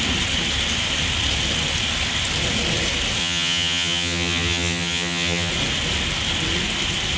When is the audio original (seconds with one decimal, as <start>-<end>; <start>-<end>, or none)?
0.0-3.2; 5.5-7.2

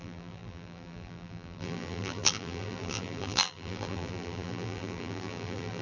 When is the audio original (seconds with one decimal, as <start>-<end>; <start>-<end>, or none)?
none

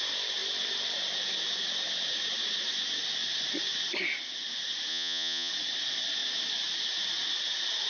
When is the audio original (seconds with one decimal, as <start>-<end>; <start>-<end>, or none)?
0.0-4.9; 5.5-7.9